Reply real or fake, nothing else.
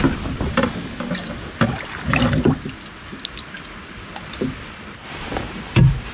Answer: real